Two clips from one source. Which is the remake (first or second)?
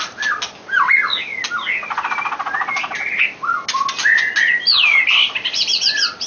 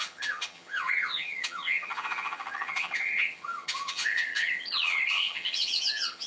second